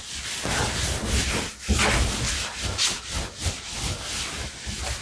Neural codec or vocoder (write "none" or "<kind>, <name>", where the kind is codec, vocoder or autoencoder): none